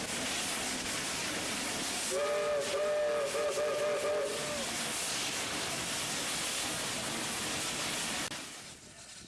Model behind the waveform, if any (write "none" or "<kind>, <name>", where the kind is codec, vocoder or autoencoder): none